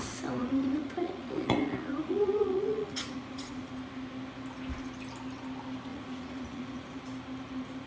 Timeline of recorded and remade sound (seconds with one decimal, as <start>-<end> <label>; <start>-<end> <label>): 0.0-0.4 recorded; 0.4-3.7 remade; 3.7-5.9 recorded; 5.9-7.0 remade; 7.0-7.9 recorded